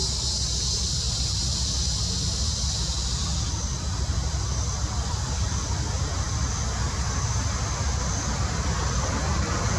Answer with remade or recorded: recorded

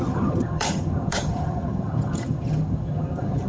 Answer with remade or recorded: remade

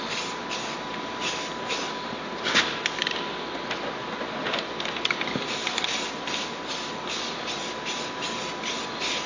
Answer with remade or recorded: recorded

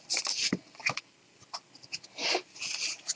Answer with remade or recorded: recorded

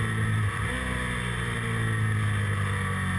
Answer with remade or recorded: recorded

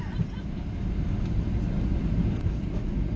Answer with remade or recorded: recorded